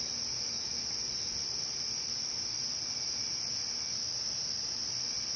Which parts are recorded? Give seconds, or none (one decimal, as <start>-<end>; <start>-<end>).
0.0-5.4